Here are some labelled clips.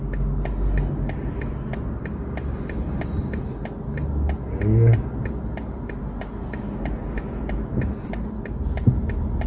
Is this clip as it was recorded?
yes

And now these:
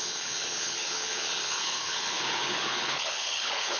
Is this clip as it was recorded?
no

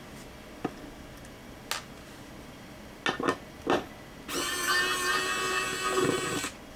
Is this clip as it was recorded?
yes